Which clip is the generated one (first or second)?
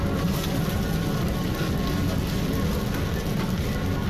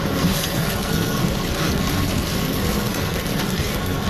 second